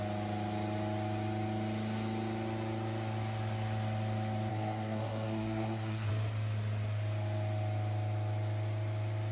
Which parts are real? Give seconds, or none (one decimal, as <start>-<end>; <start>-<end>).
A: 0.0-4.5; 6.1-9.3